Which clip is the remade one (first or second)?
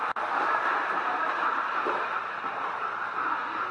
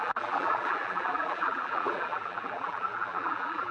second